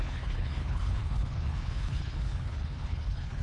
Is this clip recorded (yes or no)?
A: no